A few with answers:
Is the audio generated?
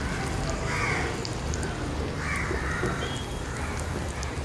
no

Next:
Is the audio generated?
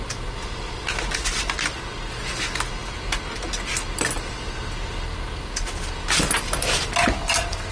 no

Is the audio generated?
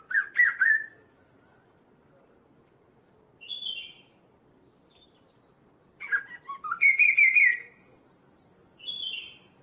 no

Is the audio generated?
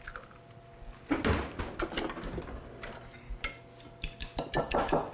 no